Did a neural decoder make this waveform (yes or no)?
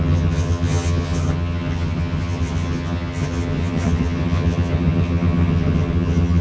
yes